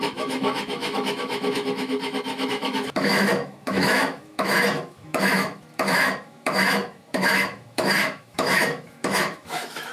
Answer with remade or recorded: remade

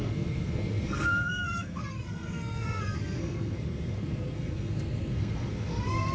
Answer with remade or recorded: remade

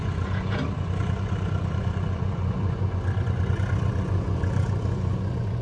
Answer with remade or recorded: remade